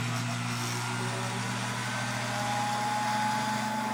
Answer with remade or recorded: recorded